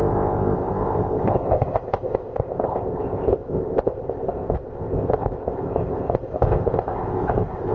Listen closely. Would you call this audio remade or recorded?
remade